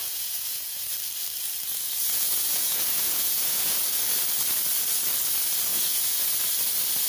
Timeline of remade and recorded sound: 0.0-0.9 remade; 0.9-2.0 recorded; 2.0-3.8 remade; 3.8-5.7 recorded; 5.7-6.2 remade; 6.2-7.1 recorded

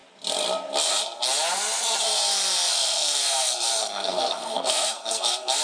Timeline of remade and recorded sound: 0.0-2.7 recorded; 2.7-5.6 remade

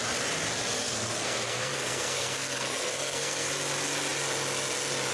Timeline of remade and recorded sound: 0.0-0.8 recorded; 0.8-3.5 remade; 3.5-5.1 recorded

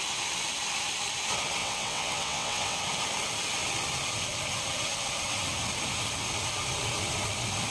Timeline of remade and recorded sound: 0.0-1.6 recorded; 1.6-2.8 remade; 2.8-7.7 recorded

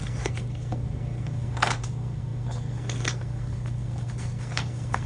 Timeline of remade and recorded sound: 0.0-5.1 remade

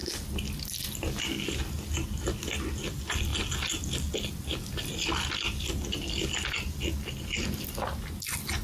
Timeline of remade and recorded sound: 0.0-8.6 recorded

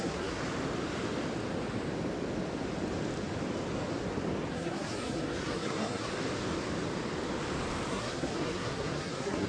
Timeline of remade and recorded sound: 0.0-0.4 remade; 0.4-4.5 recorded; 4.5-6.1 remade; 6.1-7.9 recorded; 7.9-9.5 remade

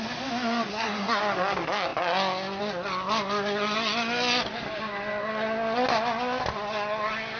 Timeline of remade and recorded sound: 0.0-0.7 recorded; 0.7-1.2 remade; 1.2-7.4 recorded